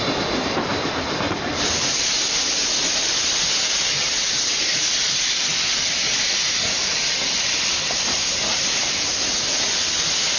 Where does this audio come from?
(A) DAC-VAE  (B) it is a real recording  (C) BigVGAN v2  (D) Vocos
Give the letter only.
B